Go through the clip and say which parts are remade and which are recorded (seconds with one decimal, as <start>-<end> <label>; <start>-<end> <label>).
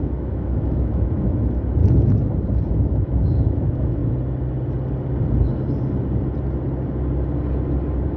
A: 0.0-1.8 remade; 1.8-2.7 recorded; 2.7-4.0 remade; 4.0-8.2 recorded